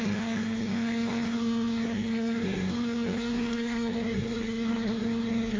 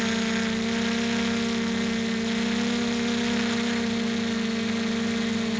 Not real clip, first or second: first